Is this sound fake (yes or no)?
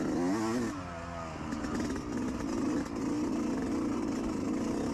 no